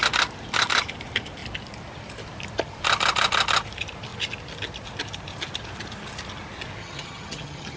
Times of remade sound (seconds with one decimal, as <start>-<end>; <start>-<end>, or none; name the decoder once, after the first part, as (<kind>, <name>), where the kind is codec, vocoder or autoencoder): 6.8-7.8 (vocoder, HiFi-GAN)